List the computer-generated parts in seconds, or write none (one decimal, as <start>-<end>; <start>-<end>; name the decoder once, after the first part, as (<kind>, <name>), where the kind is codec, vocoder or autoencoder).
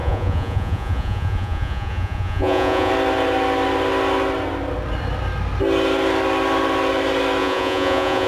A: 0.0-2.9 (vocoder, Vocos); 7.4-8.3